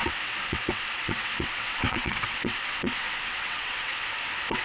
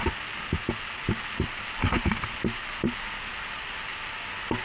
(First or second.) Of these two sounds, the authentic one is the second